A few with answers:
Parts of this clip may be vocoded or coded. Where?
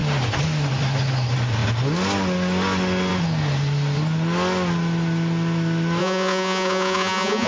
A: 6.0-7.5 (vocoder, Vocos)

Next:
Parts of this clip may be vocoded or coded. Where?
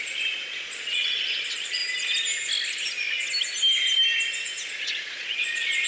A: 0.0-1.8 (vocoder, Vocos); 4.7-5.9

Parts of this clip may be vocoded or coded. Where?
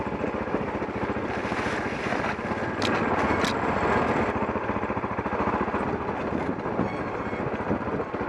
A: none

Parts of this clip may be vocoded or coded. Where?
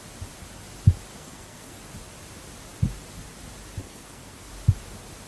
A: 1.1-1.8 (codec, SNAC); 3.8-4.5